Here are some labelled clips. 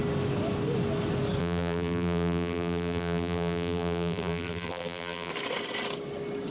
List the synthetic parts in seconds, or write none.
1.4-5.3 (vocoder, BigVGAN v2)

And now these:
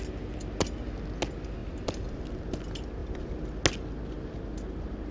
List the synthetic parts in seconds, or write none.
1.6-2.1 (vocoder, BigVGAN v2)

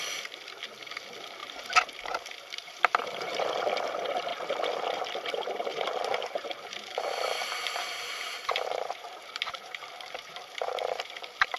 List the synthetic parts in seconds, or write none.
1.4-3.4 (vocoder, BigVGAN v2); 5.7-11.0

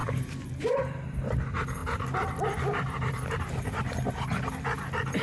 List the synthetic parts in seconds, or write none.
0.0-0.8 (vocoder, BigVGAN v2); 1.8-3.9